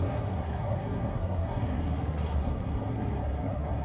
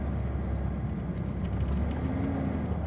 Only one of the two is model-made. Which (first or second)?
first